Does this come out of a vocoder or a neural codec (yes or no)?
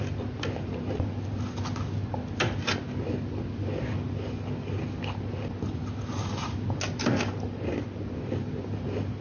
no